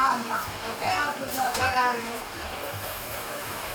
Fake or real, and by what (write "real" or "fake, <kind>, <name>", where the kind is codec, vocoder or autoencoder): fake, codec, DAC